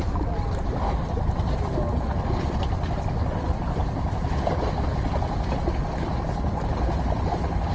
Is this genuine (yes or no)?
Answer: yes